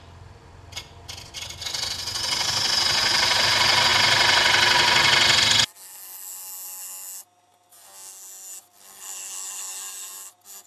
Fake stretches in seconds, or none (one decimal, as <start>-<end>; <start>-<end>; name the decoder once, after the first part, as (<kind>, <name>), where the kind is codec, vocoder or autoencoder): none